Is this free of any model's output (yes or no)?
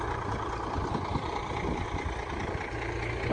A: yes